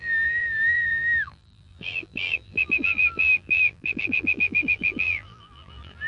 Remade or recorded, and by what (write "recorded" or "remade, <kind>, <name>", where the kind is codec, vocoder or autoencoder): remade, vocoder, BigVGAN v2